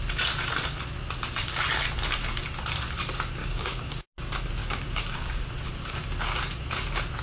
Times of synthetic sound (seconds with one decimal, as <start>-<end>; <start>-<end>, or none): 3.4-4.1; 4.6-5.5